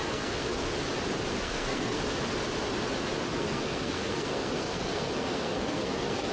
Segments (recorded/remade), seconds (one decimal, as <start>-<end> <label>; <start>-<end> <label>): 0.0-0.7 remade; 0.7-1.3 recorded; 1.3-2.0 remade; 2.0-3.3 recorded; 3.3-6.3 remade

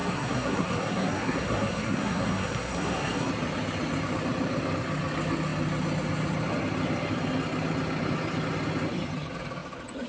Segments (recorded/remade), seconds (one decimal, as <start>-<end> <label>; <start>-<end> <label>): 0.0-3.3 remade; 3.3-10.1 recorded